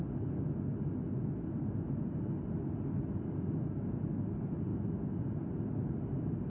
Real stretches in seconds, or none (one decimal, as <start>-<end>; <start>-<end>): 0.0-6.5